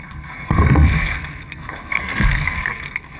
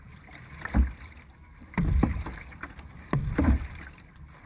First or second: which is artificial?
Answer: first